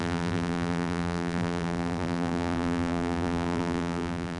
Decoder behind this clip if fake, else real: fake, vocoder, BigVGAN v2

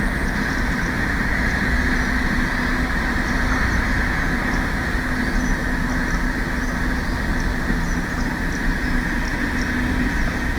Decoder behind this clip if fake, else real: real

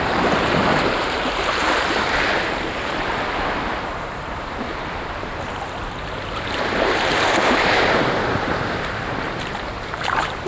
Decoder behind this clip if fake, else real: fake, vocoder, BigVGAN v2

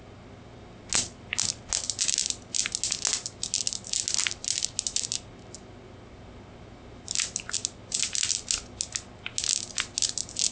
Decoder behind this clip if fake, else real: real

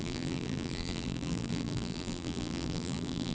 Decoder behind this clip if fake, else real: fake, vocoder, BigVGAN v2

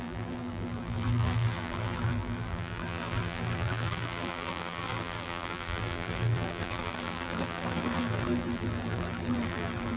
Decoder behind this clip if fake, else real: fake, vocoder, BigVGAN v2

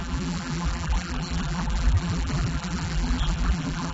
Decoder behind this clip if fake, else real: fake, vocoder, BigVGAN v2